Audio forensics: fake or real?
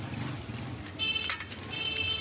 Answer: real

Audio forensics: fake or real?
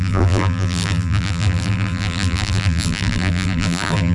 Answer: fake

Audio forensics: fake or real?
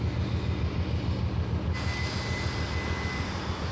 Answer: real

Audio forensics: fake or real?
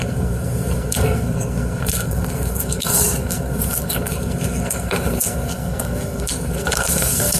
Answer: fake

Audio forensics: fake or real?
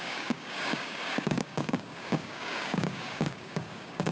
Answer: fake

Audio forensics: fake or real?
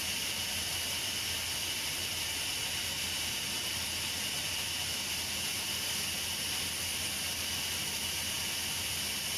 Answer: real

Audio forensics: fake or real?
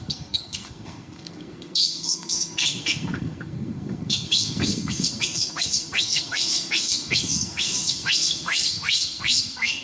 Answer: fake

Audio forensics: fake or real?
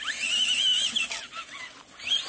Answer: real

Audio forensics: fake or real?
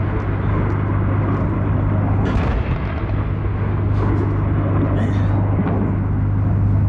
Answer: real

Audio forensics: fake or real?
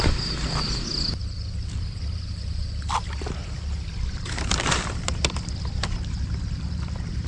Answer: fake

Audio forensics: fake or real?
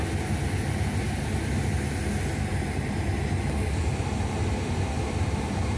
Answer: real